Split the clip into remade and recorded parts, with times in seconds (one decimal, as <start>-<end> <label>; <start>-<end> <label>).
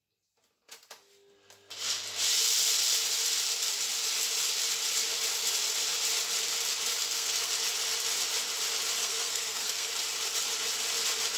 0.0-7.0 recorded; 7.0-7.5 remade; 7.5-9.0 recorded; 9.0-9.9 remade; 9.9-11.4 recorded